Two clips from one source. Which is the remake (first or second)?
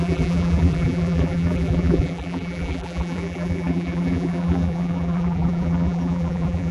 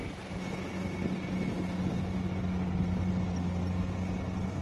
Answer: first